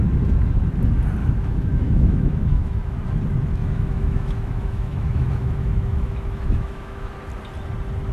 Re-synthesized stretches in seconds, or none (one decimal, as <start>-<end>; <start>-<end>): 1.2-3.0; 3.6-7.1